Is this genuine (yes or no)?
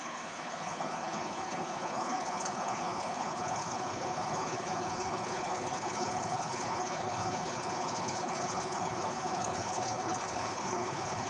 no